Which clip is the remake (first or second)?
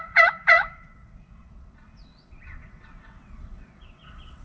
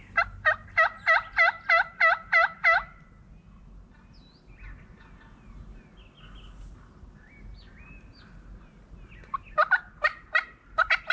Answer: first